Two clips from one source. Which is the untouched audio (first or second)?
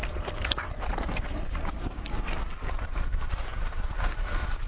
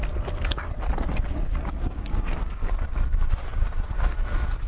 second